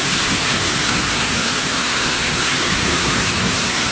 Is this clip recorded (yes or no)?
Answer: no